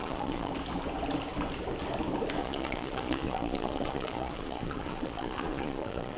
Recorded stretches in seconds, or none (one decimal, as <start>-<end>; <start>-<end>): 0.5-2.4